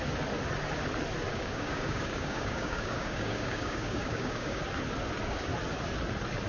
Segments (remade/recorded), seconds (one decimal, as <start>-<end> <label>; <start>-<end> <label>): 0.0-1.3 recorded; 1.3-4.6 remade; 4.6-6.5 recorded

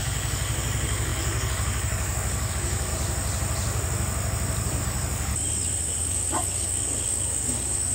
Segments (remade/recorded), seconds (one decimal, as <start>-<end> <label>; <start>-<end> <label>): 0.0-2.9 remade; 2.9-4.8 recorded; 4.8-5.3 remade; 5.3-6.0 recorded; 6.0-7.9 remade

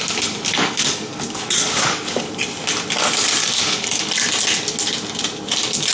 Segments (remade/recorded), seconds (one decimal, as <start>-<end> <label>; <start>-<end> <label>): 0.0-0.5 recorded; 0.5-2.3 remade; 2.3-3.4 recorded; 3.4-4.0 remade; 4.0-5.9 recorded

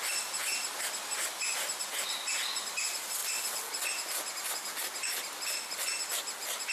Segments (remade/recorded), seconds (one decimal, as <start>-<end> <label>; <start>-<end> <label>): 0.0-6.7 recorded